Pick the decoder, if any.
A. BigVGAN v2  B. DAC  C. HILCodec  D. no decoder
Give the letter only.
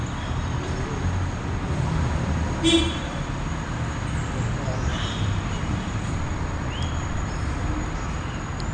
D